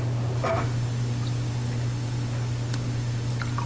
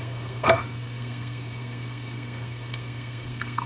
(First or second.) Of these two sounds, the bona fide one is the first